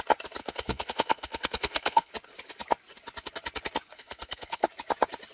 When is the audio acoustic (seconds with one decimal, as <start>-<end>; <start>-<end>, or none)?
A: 0.0-0.4; 2.1-3.9; 4.7-5.3